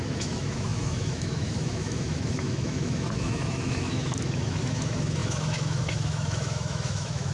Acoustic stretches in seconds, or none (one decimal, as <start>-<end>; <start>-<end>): none